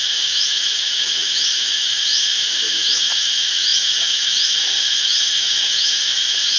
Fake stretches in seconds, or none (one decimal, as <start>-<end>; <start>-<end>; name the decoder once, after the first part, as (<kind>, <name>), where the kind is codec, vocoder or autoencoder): 0.0-6.6 (autoencoder, DAC-VAE)